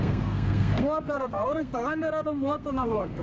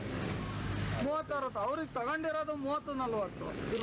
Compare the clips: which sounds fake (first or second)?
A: first